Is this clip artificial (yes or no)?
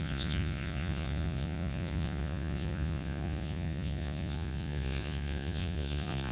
yes